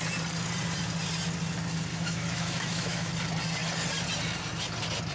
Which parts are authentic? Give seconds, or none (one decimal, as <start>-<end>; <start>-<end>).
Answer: 0.0-1.9; 3.1-5.1